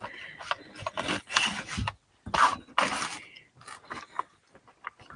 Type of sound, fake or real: real